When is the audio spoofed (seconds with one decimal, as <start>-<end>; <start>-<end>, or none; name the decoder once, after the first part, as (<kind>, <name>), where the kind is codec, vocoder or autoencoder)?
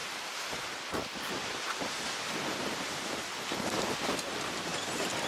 0.0-5.3 (vocoder, BigVGAN v2)